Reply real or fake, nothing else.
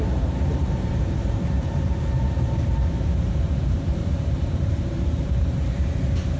fake